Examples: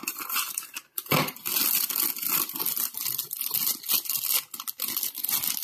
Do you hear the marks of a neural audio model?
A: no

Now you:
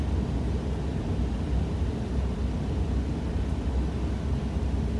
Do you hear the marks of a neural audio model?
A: no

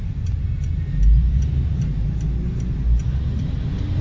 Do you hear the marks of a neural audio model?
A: no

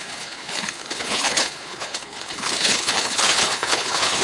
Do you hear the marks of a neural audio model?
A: yes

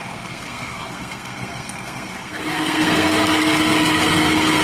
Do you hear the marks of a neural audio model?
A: yes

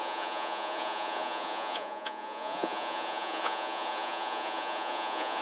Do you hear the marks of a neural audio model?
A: yes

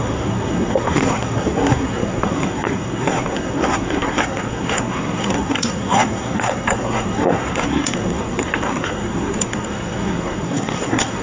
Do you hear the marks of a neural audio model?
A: yes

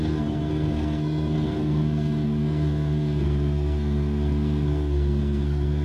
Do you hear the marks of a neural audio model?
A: yes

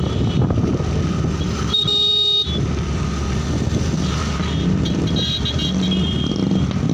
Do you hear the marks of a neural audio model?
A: no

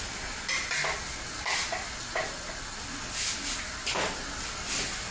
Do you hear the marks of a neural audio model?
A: no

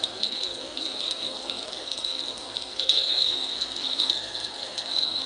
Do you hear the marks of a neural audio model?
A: yes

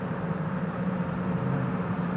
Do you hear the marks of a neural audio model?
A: yes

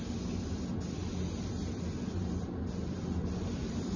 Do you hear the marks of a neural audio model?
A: yes